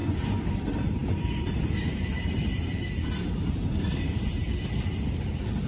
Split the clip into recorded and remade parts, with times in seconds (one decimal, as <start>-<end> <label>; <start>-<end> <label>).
0.0-0.5 recorded; 0.5-5.7 remade